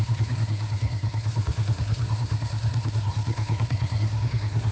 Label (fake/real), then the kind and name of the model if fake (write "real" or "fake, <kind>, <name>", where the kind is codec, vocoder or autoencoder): fake, codec, SNAC